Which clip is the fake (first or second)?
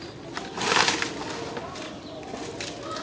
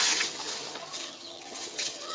second